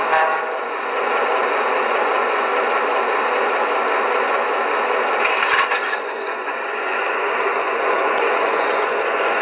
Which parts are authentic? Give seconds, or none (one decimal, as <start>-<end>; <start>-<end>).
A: 2.5-6.0